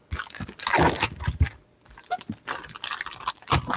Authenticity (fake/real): real